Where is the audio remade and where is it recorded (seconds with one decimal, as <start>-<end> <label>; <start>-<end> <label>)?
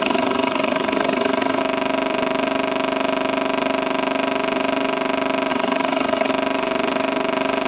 0.0-1.6 remade; 1.6-5.5 recorded; 5.5-6.3 remade; 6.3-7.7 recorded